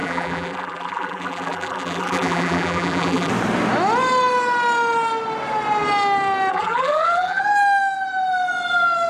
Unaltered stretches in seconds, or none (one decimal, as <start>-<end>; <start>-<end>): 3.3-6.5; 7.4-9.1